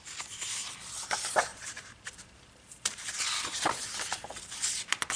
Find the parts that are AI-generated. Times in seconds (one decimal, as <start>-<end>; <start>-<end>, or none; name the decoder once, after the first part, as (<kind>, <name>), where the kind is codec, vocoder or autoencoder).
1.5-3.7 (vocoder, BigVGAN v2)